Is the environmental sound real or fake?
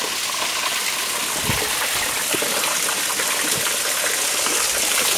real